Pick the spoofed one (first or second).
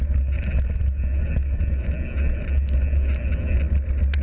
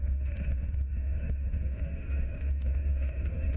second